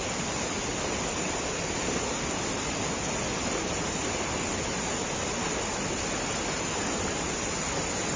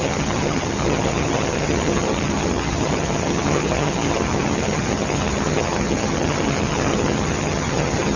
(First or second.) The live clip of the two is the first